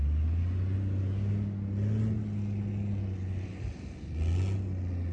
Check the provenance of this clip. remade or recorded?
recorded